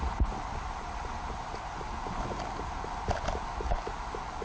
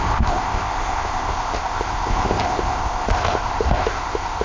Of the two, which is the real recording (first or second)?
first